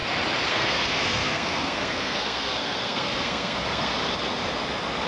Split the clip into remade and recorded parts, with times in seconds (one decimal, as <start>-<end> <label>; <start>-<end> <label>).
0.0-0.5 recorded; 0.5-3.9 remade; 3.9-5.1 recorded

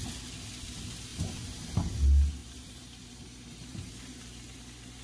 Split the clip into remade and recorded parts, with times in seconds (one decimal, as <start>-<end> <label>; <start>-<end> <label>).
0.0-1.1 recorded; 1.1-1.8 remade; 1.8-2.4 recorded; 2.4-4.2 remade; 4.2-5.0 recorded

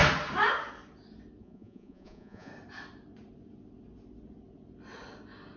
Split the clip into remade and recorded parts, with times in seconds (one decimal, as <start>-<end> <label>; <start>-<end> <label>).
0.0-1.4 recorded; 1.4-2.5 remade; 2.5-5.6 recorded